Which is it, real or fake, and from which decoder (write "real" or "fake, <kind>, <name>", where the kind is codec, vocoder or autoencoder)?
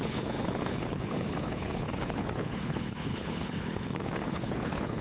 fake, codec, HILCodec